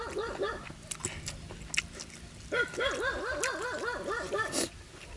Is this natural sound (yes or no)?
yes